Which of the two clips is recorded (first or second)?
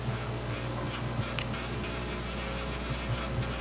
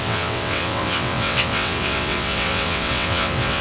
first